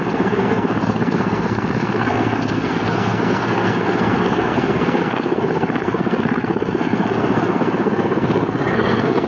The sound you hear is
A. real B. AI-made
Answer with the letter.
B